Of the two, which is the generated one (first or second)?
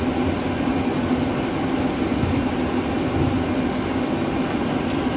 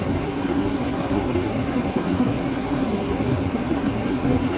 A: second